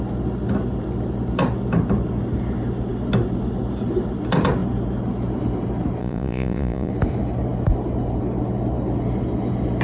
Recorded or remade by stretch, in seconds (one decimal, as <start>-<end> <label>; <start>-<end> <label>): 0.0-6.0 recorded; 6.0-6.9 remade; 6.9-9.8 recorded

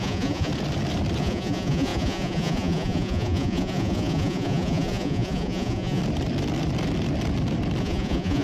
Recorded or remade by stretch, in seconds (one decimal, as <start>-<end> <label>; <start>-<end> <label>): 0.0-0.5 remade; 0.5-1.2 recorded; 1.2-6.0 remade; 6.0-7.8 recorded; 7.8-8.4 remade

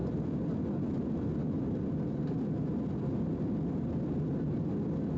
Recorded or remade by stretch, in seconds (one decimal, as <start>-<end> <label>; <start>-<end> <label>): 0.0-5.2 recorded

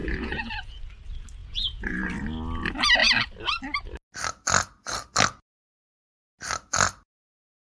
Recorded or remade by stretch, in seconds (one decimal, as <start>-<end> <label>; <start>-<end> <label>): 0.0-0.8 remade; 0.8-1.4 recorded; 1.4-2.1 remade; 2.1-7.8 recorded